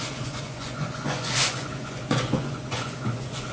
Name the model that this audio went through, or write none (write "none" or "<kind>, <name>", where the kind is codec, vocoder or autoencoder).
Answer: vocoder, Vocos